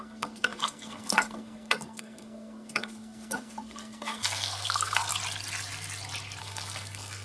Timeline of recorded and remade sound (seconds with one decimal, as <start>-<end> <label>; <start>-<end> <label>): 0.0-5.1 remade; 5.1-6.4 recorded; 6.4-7.2 remade